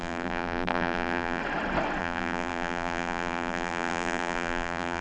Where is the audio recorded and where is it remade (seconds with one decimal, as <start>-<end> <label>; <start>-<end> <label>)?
0.0-1.4 remade; 1.4-2.0 recorded; 2.0-5.0 remade